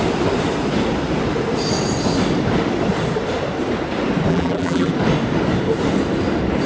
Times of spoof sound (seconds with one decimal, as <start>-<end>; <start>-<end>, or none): 4.3-4.9